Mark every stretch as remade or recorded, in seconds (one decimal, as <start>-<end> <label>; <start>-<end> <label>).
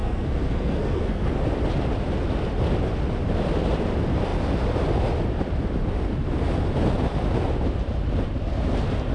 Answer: 0.0-1.3 remade; 1.3-9.1 recorded